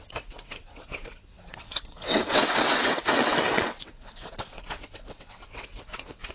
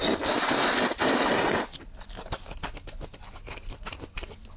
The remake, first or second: first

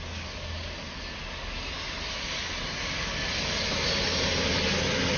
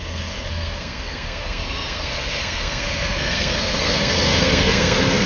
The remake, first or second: second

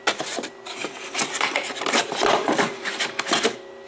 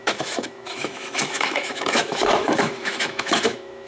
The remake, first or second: second